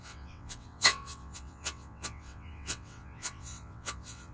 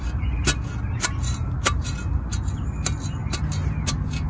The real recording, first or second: second